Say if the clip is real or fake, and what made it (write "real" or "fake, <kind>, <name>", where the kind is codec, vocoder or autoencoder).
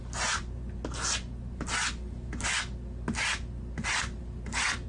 real